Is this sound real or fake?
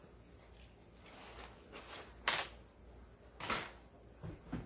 real